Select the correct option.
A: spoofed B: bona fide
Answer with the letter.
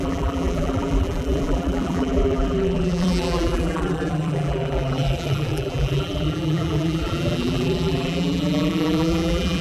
A